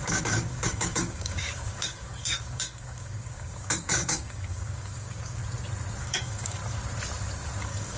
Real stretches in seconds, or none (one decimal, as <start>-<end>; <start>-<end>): 5.4-6.0; 6.6-7.6